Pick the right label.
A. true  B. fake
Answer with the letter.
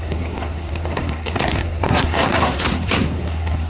B